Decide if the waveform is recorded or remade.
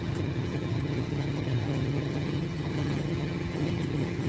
remade